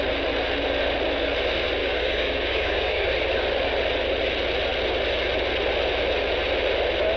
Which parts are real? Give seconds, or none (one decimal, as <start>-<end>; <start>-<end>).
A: 0.0-1.8; 3.1-7.2

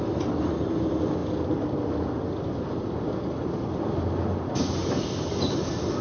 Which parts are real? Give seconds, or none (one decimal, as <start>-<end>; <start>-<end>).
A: 0.0-6.0

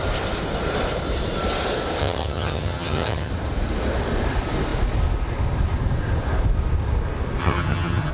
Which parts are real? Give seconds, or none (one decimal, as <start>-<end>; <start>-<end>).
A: 0.0-2.0; 3.3-7.4

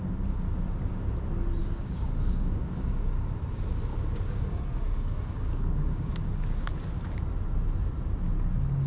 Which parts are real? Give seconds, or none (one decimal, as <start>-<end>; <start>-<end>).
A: 0.0-1.6; 3.3-3.9; 6.7-8.9

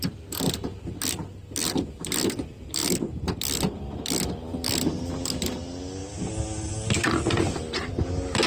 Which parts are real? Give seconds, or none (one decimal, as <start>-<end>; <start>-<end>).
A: 0.0-8.5

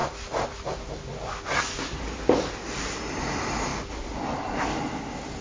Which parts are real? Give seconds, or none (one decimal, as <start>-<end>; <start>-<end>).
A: 0.0-5.4

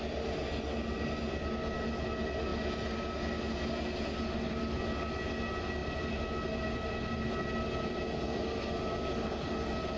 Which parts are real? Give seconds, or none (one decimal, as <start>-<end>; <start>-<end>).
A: 0.0-10.0

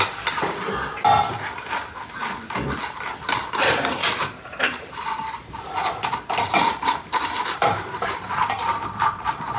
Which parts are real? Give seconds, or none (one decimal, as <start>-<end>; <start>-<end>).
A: 0.0-4.0; 9.2-9.6